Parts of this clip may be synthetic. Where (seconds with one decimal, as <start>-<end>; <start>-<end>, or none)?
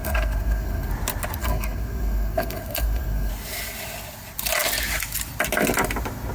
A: 0.0-0.9; 1.4-3.3